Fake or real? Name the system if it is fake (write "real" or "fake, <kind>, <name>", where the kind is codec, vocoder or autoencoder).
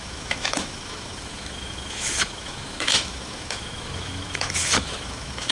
fake, autoencoder, DAC-VAE